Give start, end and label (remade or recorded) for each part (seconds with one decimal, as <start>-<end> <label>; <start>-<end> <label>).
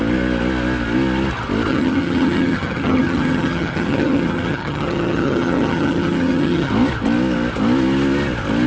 0.0-1.7 recorded; 1.7-6.7 remade; 6.7-8.7 recorded